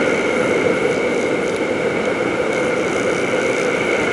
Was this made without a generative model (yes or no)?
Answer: no